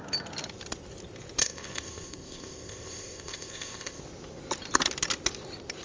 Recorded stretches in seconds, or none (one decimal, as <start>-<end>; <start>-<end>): 0.0-1.4; 4.0-5.8